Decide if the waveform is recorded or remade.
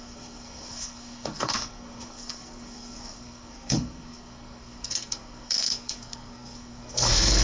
remade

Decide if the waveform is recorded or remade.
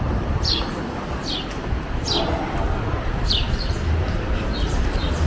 recorded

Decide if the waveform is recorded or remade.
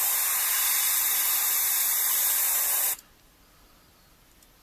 recorded